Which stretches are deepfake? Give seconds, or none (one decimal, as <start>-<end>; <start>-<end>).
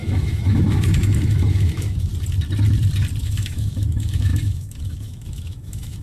0.0-2.1; 3.2-6.0